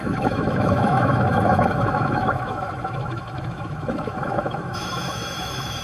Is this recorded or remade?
remade